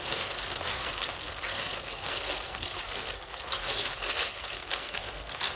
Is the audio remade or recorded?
remade